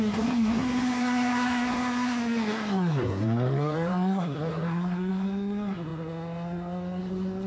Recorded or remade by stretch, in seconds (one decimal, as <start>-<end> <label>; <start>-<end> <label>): 0.0-7.5 remade